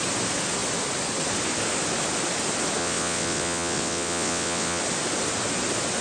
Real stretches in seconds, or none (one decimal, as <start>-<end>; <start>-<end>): 0.0-2.8; 4.8-6.0